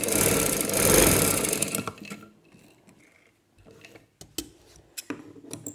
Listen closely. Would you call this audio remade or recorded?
recorded